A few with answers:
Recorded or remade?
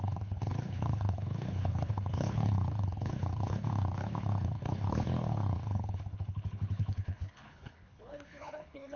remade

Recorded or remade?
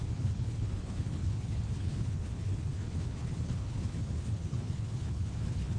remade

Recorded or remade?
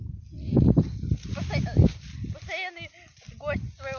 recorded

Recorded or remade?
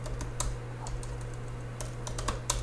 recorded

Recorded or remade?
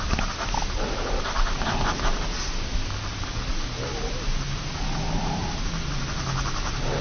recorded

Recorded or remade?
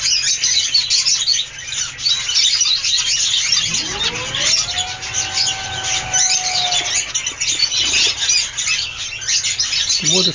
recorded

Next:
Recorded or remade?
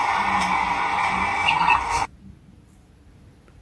recorded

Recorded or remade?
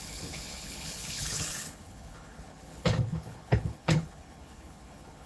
remade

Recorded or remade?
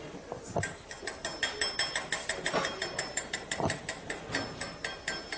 recorded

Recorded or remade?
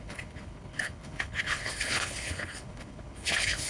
remade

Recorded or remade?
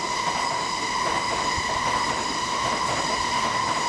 recorded